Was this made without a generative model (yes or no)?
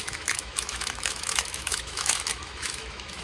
no